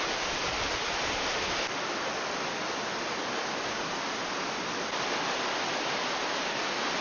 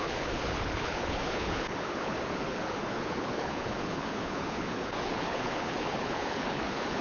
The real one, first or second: first